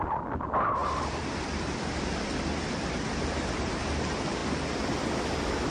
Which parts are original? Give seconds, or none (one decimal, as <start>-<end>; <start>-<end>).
0.0-0.8; 3.7-5.7